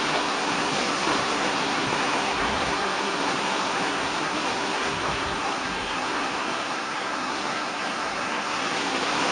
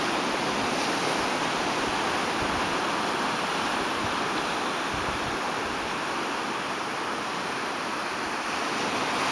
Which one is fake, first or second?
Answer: first